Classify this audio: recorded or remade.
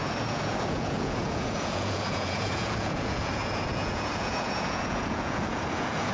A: remade